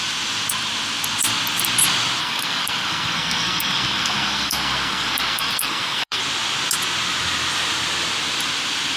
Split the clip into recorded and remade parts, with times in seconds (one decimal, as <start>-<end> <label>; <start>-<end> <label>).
0.0-2.2 recorded; 2.2-6.2 remade; 6.2-9.0 recorded